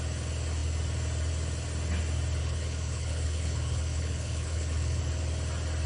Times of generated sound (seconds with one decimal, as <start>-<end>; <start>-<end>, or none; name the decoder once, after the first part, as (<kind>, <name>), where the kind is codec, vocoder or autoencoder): 2.4-5.0 (codec, HILCodec)